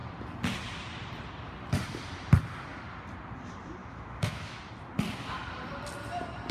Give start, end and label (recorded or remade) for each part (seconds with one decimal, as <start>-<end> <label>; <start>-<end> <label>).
0.0-3.8 recorded; 3.8-4.6 remade; 4.6-6.5 recorded